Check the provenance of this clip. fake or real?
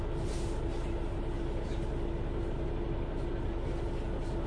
real